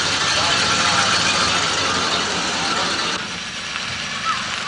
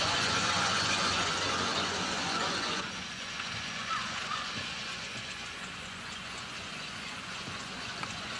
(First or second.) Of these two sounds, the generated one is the second